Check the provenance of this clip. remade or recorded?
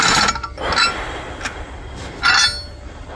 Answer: recorded